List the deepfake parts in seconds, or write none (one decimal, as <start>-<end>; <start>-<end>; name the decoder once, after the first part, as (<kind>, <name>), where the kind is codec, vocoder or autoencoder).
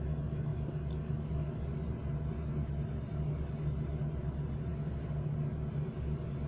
none